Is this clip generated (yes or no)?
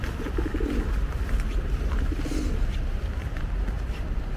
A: no